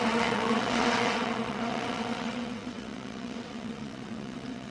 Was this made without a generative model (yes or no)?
no